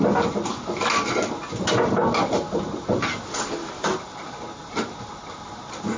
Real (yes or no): yes